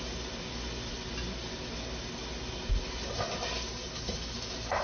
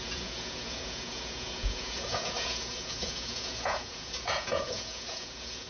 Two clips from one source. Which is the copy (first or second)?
second